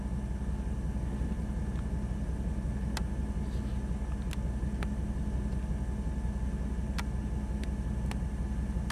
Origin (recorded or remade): recorded